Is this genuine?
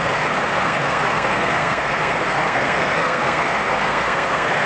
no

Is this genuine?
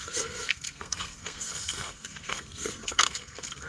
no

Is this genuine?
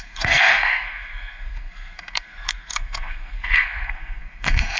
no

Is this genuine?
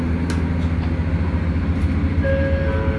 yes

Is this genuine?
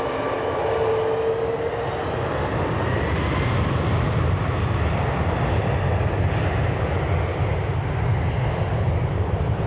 yes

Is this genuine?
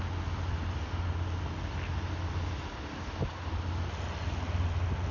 yes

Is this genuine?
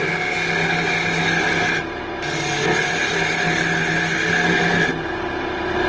yes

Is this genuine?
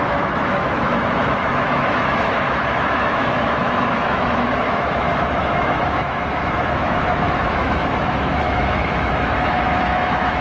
no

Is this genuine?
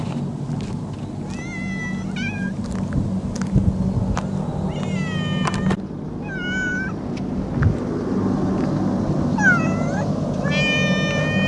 yes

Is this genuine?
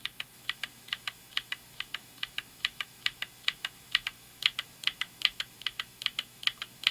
no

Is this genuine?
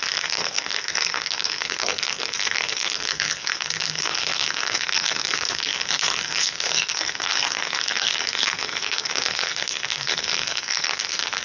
no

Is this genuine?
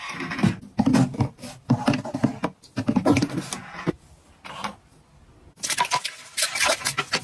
yes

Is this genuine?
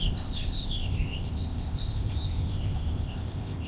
no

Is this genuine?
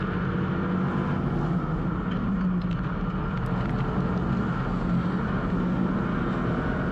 yes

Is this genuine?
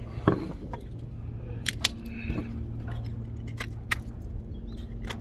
yes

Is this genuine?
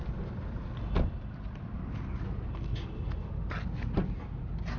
yes